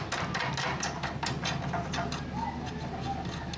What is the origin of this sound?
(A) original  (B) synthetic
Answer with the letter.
A